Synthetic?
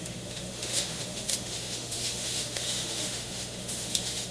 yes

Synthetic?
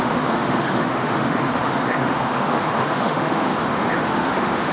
yes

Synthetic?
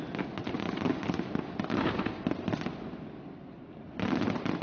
no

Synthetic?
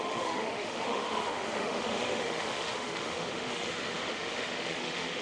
yes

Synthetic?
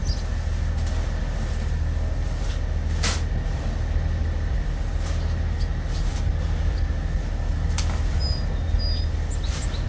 no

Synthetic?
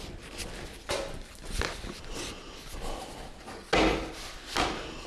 no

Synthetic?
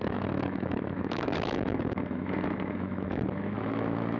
yes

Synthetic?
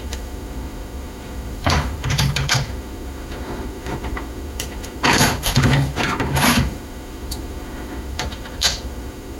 yes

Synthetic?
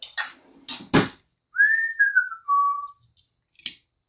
no